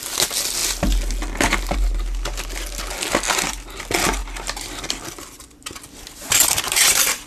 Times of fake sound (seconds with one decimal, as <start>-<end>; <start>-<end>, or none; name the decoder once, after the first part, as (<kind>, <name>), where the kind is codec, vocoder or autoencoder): none